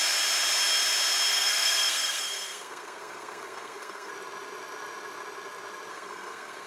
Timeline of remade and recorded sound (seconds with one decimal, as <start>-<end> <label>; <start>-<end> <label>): 0.0-1.3 recorded; 1.3-4.1 remade; 4.1-5.9 recorded; 5.9-6.7 remade